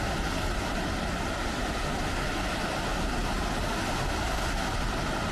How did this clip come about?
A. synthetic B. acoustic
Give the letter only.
B